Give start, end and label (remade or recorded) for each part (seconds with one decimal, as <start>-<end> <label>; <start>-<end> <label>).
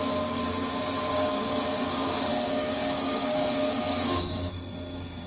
0.0-0.4 remade; 0.4-1.1 recorded; 1.1-5.3 remade